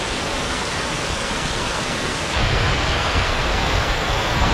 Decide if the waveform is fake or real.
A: fake